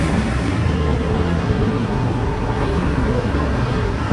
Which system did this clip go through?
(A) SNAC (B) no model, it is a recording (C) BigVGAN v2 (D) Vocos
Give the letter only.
A